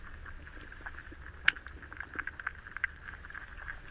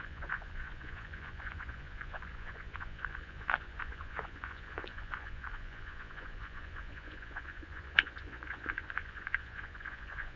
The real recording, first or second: first